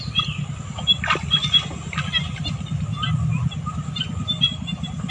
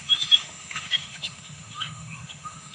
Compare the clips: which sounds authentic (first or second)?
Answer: first